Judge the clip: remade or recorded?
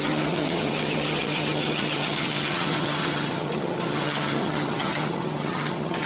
remade